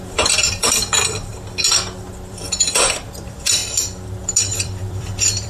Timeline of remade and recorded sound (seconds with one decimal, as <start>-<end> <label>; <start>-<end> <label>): 0.0-1.3 remade; 1.3-2.1 recorded; 2.1-3.6 remade; 3.6-4.4 recorded; 4.4-5.5 remade